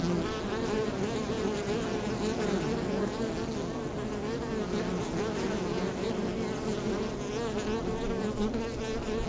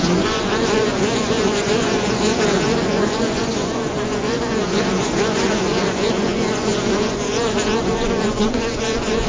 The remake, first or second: second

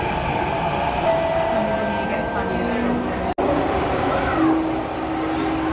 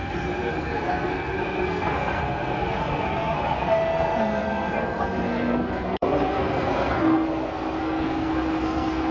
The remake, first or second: second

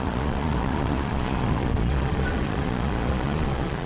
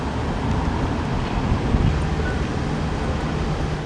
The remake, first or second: first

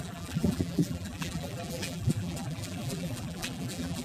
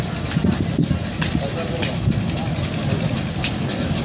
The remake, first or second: first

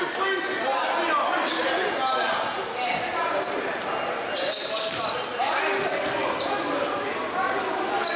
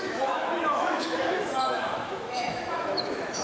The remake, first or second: second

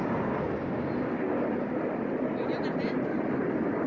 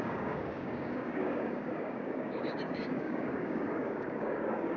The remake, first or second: second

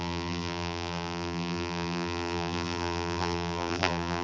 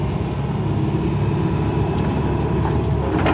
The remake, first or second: first